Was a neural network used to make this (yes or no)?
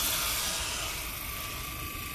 no